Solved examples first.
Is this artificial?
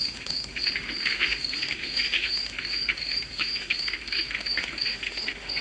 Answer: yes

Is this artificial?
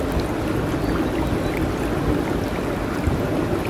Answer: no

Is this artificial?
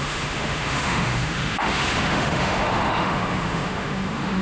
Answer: yes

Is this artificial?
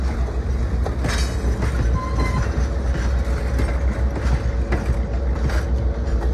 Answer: no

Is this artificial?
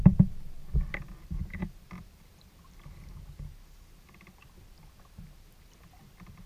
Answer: no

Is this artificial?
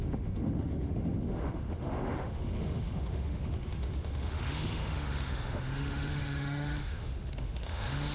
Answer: yes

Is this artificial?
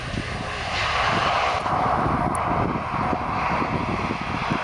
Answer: no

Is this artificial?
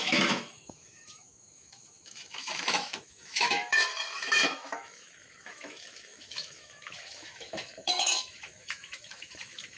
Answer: yes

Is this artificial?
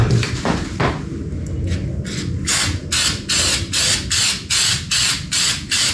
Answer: no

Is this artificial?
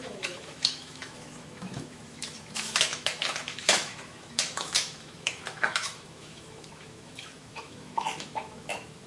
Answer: yes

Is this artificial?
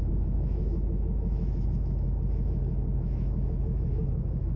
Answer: yes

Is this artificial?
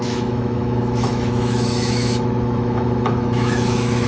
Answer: yes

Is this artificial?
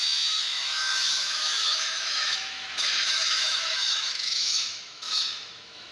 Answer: yes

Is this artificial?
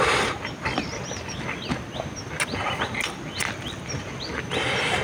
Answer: no